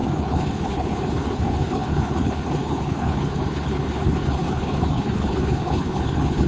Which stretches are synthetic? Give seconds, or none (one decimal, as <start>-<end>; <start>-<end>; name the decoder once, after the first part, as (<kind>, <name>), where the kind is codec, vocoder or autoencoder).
0.0-6.5 (codec, HILCodec)